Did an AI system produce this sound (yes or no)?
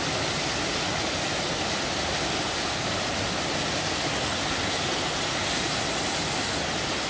no